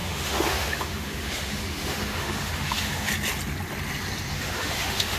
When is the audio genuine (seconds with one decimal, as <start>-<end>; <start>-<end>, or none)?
3.1-4.3